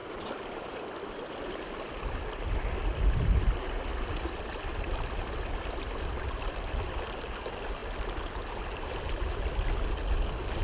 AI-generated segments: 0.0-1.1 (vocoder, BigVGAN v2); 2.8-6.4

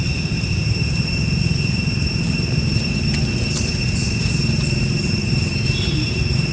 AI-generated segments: 0.0-0.6 (vocoder, BigVGAN v2); 1.4-6.5

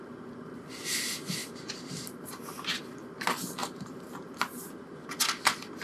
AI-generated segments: 1.4-2.8 (vocoder, BigVGAN v2); 3.6-4.7

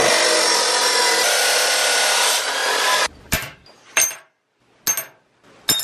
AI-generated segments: 2.6-4.2 (vocoder, BigVGAN v2)

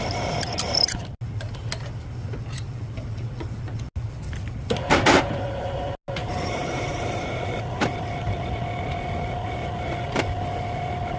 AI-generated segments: 6.2-7.6 (vocoder, BigVGAN v2)

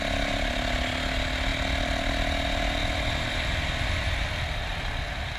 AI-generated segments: none

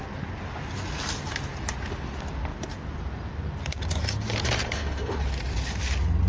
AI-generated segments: 2.5-5.6 (vocoder, BigVGAN v2)